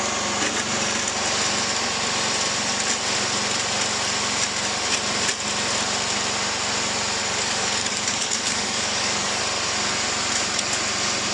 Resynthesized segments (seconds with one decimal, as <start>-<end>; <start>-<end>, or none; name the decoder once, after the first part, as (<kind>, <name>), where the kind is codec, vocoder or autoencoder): 7.2-9.4 (codec, DAC)